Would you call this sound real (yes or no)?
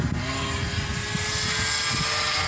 yes